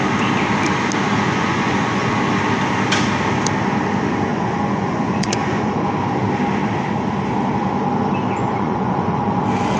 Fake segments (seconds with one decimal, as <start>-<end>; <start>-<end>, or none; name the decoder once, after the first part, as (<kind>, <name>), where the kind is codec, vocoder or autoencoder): 1.1-2.2 (vocoder, Vocos); 4.3-5.8; 8.4-9.4